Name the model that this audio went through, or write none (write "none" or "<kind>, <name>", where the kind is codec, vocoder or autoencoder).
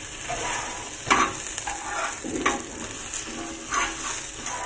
none